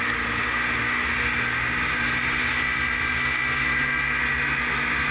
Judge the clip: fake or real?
real